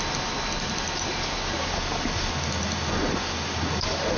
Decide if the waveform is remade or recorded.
recorded